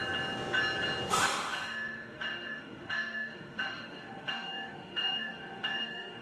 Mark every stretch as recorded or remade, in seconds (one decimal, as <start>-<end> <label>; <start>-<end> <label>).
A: 0.0-1.1 recorded; 1.1-6.2 remade